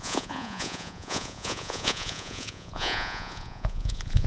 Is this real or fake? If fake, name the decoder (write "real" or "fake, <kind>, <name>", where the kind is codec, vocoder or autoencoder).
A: fake, vocoder, Vocos